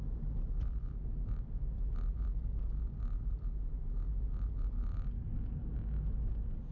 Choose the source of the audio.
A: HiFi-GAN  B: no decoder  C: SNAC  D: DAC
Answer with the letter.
B